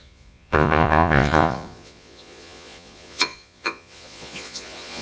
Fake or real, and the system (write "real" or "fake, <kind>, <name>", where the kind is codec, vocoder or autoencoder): fake, vocoder, Vocos